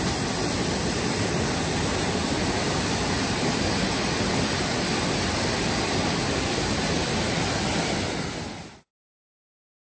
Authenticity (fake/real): real